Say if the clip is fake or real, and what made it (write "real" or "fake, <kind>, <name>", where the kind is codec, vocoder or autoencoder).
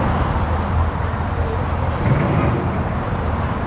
fake, vocoder, BigVGAN v2